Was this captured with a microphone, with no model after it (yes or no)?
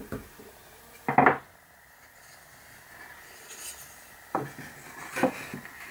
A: yes